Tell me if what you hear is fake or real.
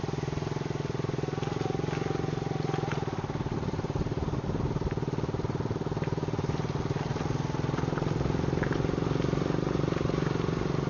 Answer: real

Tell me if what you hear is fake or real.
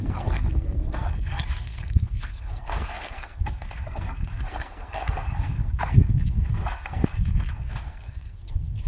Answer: fake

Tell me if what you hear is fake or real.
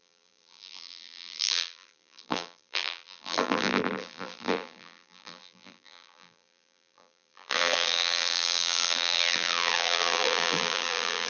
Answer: fake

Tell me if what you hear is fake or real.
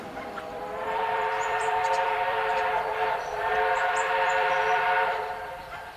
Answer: fake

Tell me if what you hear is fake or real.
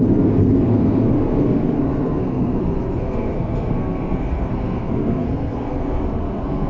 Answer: fake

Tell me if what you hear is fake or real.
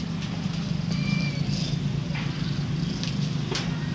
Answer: real